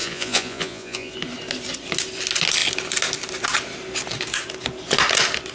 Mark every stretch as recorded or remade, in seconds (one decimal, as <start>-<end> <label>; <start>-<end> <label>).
0.0-1.1 remade; 1.1-5.5 recorded